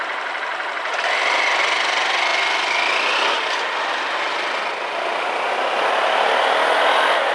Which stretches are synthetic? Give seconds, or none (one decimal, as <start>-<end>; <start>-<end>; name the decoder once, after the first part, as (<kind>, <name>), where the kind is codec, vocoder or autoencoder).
none